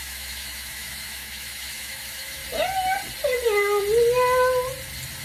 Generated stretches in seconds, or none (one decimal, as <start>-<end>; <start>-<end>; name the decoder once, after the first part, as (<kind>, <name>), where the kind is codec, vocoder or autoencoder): 0.0-2.4 (autoencoder, DAC-VAE)